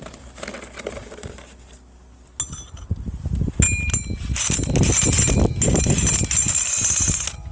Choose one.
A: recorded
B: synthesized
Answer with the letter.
A